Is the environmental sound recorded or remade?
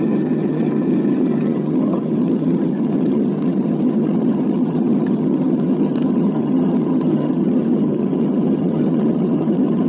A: remade